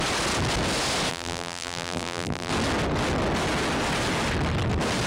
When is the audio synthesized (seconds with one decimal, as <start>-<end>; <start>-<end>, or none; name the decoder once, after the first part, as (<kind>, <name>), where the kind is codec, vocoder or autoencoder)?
1.1-2.5 (vocoder, BigVGAN v2)